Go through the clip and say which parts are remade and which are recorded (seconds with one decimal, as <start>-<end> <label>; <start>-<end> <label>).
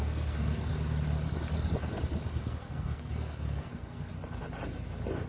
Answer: 0.0-0.7 remade; 0.7-2.4 recorded; 2.4-4.1 remade; 4.1-5.3 recorded